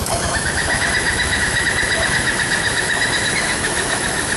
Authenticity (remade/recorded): remade